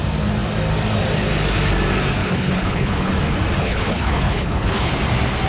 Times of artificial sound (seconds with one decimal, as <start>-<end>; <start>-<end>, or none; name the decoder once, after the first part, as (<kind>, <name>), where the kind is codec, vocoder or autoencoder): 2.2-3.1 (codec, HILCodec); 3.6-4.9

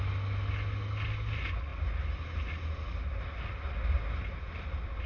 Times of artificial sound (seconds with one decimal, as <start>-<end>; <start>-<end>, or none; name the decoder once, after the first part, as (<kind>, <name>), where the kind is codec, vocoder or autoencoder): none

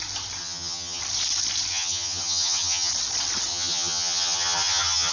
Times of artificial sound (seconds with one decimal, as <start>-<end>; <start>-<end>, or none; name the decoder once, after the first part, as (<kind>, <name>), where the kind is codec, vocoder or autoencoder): 0.4-1.0 (vocoder, HiFi-GAN); 1.7-2.9; 3.5-5.1

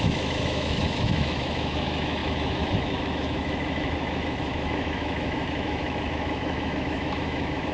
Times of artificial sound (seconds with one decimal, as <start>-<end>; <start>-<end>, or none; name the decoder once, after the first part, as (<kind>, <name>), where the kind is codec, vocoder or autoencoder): 0.0-7.7 (autoencoder, DAC-VAE)

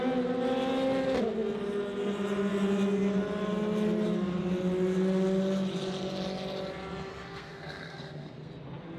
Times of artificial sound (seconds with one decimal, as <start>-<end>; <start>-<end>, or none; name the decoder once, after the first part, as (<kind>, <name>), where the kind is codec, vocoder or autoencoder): 7.1-8.5 (codec, SNAC)

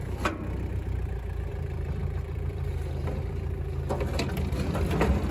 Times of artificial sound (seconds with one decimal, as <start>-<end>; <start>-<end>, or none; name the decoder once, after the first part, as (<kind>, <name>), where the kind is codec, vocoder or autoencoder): 1.5-2.7 (vocoder, BigVGAN v2)